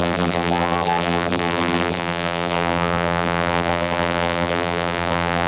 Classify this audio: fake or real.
fake